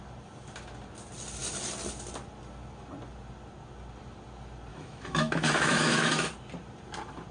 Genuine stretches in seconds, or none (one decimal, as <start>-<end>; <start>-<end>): 0.0-4.7; 6.3-7.3